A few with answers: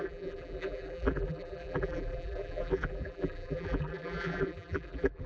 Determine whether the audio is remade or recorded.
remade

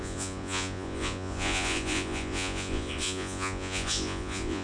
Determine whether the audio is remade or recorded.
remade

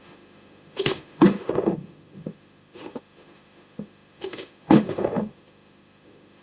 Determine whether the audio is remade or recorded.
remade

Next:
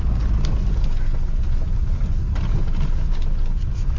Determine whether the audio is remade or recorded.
recorded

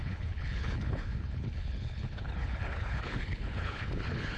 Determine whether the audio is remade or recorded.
remade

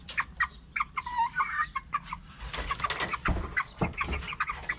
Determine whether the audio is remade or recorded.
recorded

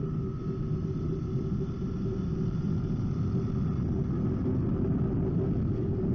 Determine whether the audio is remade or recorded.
recorded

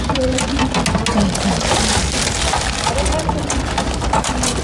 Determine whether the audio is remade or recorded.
recorded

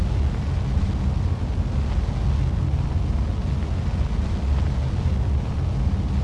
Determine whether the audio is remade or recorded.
recorded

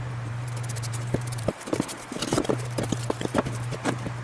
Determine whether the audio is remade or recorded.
remade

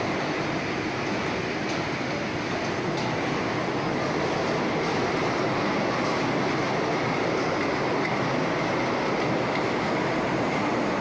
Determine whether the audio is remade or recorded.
recorded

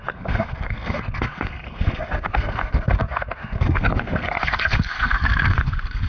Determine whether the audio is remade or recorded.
remade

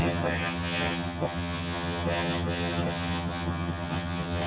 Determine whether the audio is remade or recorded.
remade